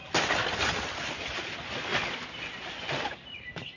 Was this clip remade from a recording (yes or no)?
no